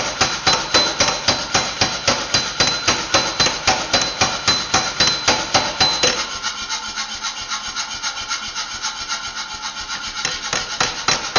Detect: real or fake real